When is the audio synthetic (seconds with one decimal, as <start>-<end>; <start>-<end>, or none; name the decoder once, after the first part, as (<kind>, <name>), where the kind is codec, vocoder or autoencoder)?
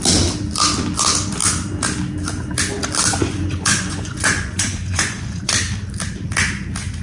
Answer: 3.1-5.5 (vocoder, Vocos)